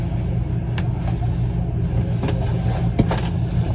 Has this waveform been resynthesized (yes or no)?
no